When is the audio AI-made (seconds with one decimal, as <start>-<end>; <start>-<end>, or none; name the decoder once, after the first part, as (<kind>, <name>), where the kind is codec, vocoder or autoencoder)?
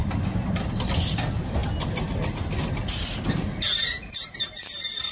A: none